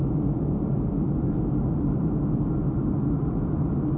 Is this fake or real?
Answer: fake